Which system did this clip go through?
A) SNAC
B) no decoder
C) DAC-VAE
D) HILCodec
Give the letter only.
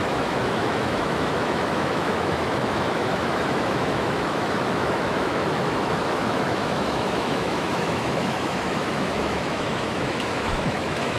C